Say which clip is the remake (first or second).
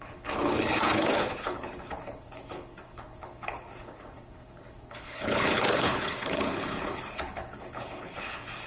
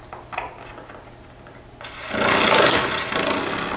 first